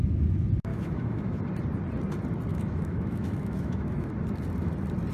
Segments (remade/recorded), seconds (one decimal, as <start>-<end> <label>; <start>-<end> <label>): 0.0-0.7 recorded; 0.7-1.4 remade; 1.4-2.5 recorded; 2.5-4.1 remade; 4.1-5.1 recorded